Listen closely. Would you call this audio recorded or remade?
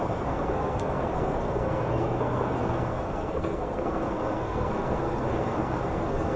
remade